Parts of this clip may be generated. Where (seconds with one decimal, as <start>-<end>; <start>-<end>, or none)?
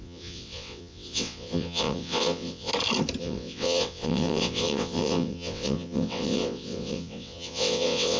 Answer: 0.0-2.7; 3.2-8.2